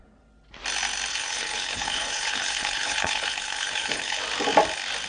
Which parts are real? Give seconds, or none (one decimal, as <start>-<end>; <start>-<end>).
0.0-1.1; 4.2-5.1